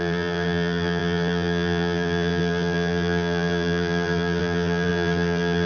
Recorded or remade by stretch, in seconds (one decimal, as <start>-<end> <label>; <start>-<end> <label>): 0.0-5.7 remade